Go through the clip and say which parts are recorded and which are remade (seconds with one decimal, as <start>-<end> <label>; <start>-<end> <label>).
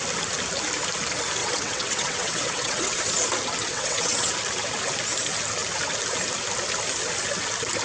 0.0-1.4 recorded; 1.4-3.0 remade; 3.0-3.6 recorded; 3.6-4.3 remade; 4.3-7.8 recorded